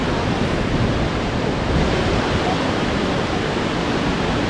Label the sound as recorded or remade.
recorded